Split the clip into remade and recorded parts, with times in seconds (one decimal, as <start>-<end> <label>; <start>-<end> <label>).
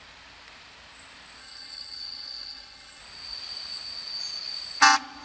0.0-1.4 recorded; 1.4-3.0 remade; 3.0-5.2 recorded